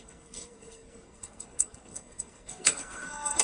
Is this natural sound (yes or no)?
no